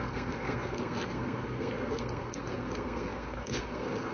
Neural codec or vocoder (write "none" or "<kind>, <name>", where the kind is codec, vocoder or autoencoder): codec, SNAC